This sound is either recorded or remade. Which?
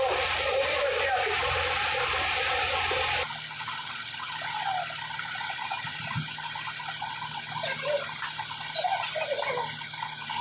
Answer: recorded